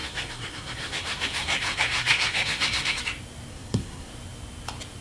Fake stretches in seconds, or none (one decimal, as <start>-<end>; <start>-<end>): 0.0-3.0; 3.5-4.1